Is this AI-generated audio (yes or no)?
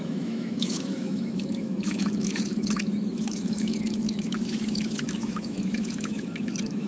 yes